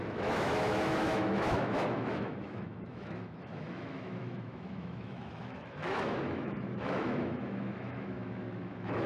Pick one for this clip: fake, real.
fake